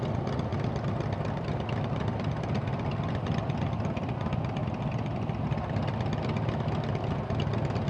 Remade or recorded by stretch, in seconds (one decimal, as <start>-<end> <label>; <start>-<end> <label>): 0.0-7.9 recorded